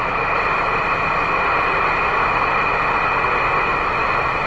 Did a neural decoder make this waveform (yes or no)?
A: no